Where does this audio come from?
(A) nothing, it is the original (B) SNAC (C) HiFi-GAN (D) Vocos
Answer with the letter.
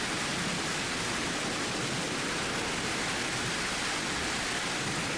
A